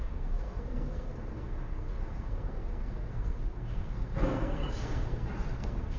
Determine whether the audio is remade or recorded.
remade